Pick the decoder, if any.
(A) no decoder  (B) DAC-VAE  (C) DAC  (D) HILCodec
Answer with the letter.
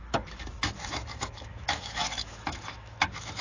B